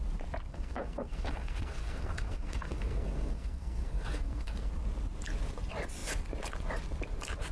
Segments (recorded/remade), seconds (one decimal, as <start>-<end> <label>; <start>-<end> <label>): 0.0-0.5 recorded; 0.5-4.7 remade; 4.7-7.5 recorded